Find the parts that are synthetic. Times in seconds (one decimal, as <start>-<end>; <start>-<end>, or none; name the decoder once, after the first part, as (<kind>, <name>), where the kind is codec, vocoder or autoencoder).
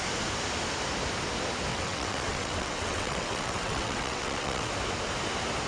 1.7-4.7 (vocoder, WaveNeXt)